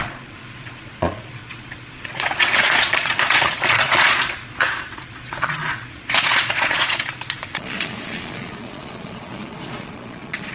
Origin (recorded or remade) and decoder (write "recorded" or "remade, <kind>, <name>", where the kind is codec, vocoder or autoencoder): remade, vocoder, Vocos